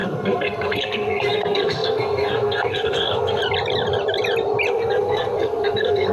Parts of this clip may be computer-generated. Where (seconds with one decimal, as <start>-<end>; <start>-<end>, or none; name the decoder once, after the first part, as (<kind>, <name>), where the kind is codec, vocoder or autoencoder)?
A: 0.0-3.4 (codec, SNAC); 4.7-6.1